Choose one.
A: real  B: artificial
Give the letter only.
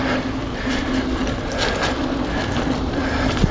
A